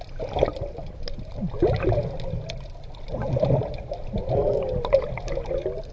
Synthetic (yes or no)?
no